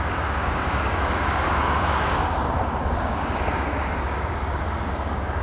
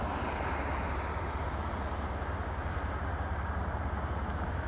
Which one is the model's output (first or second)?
first